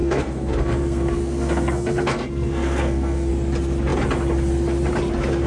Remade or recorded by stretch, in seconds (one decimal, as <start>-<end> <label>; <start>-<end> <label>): 0.0-3.3 remade; 3.3-5.5 recorded